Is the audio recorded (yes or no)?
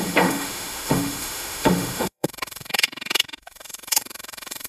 no